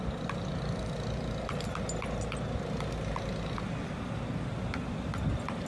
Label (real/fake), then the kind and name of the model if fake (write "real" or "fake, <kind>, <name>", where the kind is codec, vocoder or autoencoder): real